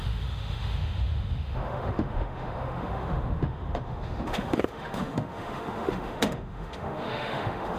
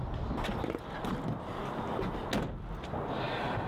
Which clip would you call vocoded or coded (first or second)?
first